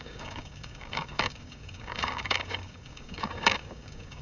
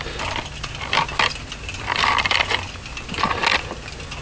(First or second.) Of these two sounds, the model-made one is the first